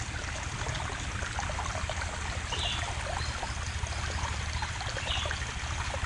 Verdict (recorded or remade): recorded